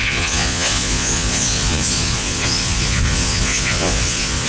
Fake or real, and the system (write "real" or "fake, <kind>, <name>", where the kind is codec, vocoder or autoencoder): fake, vocoder, Vocos